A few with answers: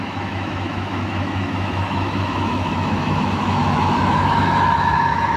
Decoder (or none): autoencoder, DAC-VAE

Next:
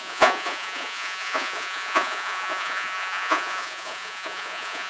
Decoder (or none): vocoder, Vocos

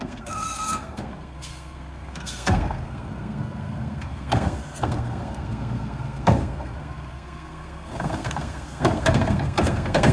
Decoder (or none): codec, SNAC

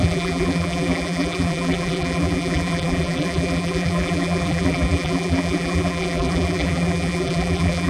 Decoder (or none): vocoder, BigVGAN v2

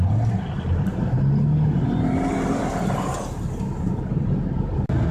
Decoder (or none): none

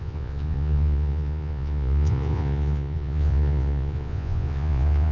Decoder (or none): vocoder, Vocos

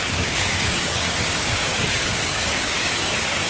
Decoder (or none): codec, DAC